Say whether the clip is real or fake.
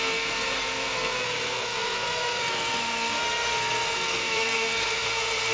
fake